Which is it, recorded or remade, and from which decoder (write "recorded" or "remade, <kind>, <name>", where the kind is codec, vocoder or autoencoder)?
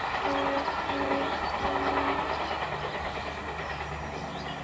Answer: recorded